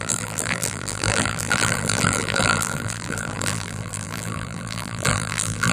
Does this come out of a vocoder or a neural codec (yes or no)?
yes